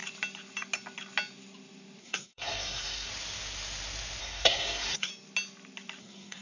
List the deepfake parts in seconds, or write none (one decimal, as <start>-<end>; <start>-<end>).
2.0-3.1; 4.2-5.1; 6.0-6.4